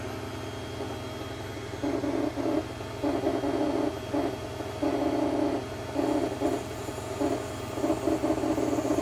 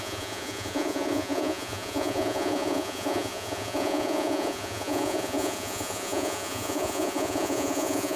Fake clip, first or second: second